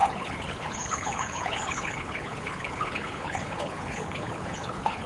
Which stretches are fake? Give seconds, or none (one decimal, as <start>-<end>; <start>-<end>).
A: 0.0-5.1